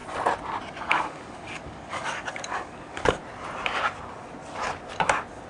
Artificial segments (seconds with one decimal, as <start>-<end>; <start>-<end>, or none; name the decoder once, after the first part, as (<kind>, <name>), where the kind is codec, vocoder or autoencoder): 0.7-3.2 (codec, DAC)